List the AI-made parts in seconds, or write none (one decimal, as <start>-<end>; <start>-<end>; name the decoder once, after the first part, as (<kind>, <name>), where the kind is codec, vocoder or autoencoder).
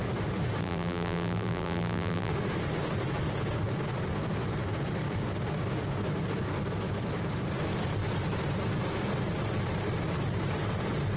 0.6-2.3 (vocoder, BigVGAN v2)